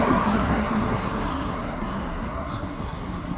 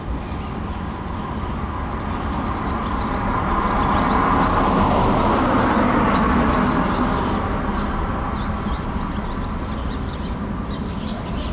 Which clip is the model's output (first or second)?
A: first